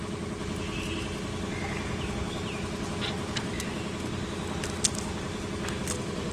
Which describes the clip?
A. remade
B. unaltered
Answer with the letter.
B